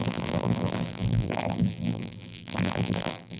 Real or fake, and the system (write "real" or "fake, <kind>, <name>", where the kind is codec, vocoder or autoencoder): fake, vocoder, BigVGAN v2